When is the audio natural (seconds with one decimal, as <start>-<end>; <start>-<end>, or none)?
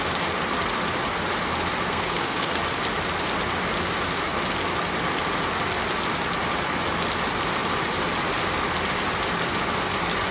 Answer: 0.0-1.9; 2.6-10.3